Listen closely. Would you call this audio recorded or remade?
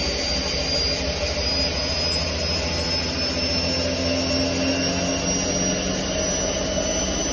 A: recorded